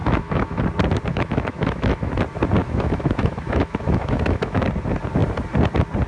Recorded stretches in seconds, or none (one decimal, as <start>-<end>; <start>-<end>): 0.6-1.1; 2.1-2.6; 4.6-6.1